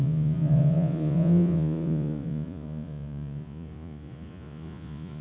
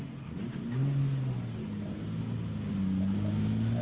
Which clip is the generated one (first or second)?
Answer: first